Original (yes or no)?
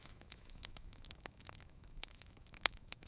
no